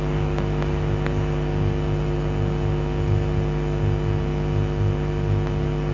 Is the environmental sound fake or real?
real